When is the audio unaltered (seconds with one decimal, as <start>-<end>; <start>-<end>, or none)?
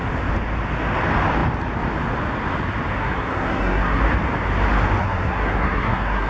0.0-3.0; 4.0-5.0